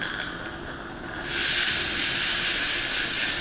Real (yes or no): yes